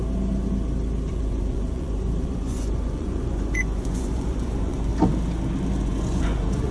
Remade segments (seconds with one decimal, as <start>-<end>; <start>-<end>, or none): 1.1-4.9; 5.8-6.7